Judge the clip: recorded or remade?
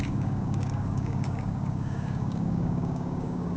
remade